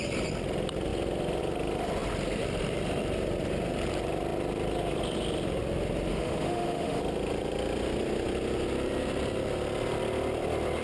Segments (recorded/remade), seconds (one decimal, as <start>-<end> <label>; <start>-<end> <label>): 0.0-6.1 recorded; 6.1-7.0 remade; 7.0-10.8 recorded